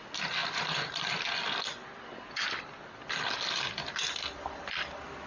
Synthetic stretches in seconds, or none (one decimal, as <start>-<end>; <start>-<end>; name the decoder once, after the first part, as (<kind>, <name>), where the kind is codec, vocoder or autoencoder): none